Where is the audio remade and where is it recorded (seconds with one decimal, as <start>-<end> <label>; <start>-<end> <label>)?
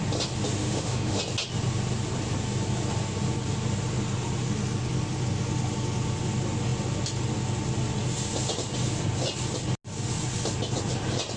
0.0-0.6 recorded; 0.6-1.2 remade; 1.2-11.4 recorded